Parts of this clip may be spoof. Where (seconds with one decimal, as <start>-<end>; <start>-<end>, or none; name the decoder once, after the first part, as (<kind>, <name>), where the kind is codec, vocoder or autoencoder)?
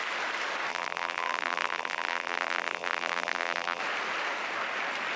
0.7-3.8 (vocoder, BigVGAN v2)